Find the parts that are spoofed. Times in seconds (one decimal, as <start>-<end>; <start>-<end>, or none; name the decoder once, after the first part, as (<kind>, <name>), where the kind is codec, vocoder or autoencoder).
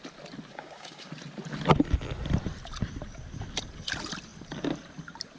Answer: 0.5-1.1 (codec, DAC)